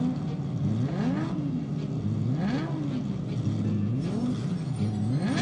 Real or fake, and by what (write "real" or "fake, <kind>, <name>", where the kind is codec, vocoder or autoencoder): real